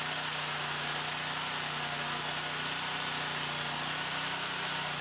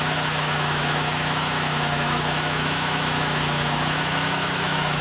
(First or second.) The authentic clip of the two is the first